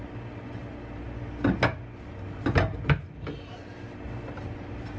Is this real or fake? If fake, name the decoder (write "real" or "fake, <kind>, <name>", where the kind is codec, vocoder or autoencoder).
real